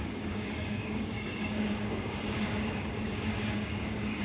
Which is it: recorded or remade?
remade